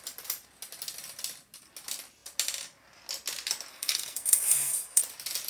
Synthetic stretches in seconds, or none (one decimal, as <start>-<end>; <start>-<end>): 3.7-5.0